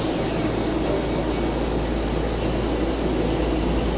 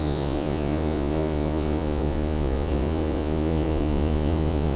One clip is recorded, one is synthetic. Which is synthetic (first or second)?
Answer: second